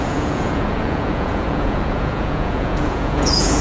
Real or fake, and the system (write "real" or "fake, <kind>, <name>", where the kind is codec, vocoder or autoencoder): fake, vocoder, Vocos